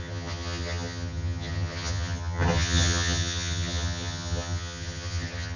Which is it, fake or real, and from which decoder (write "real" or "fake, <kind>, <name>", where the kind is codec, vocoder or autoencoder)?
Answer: fake, vocoder, HiFi-GAN